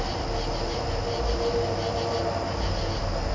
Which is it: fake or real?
real